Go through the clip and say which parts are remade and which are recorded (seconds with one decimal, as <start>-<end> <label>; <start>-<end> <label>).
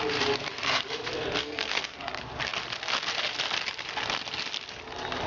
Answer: 0.0-1.4 recorded; 1.4-2.1 remade; 2.1-5.3 recorded